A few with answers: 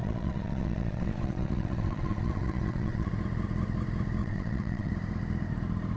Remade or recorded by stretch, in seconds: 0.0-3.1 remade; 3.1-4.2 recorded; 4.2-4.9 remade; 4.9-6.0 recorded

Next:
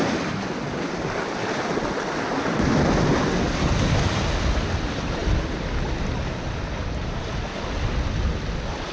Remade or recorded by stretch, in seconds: 0.0-8.9 recorded

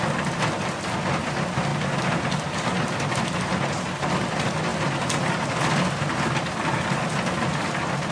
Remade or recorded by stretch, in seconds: 0.0-8.1 recorded

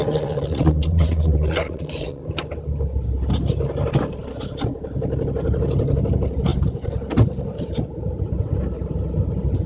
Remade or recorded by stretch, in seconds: 0.0-2.2 remade; 2.2-9.7 recorded

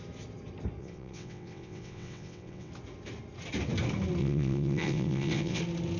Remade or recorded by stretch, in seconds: 0.0-0.8 recorded; 0.8-2.7 remade; 2.7-4.2 recorded; 4.2-5.6 remade; 5.6-6.0 recorded

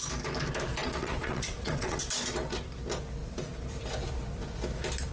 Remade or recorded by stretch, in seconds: 0.0-0.8 recorded; 0.8-2.0 remade; 2.0-5.1 recorded